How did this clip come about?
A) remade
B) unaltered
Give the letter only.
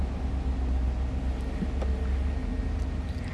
B